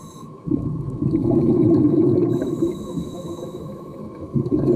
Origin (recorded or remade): remade